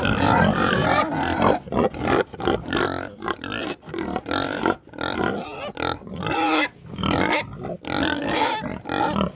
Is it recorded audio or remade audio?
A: recorded